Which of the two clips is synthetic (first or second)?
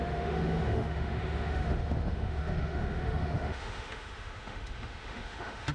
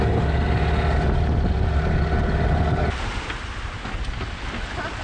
first